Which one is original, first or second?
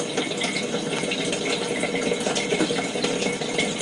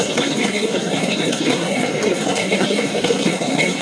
first